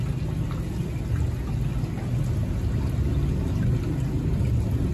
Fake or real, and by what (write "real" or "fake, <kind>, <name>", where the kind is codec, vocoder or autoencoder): real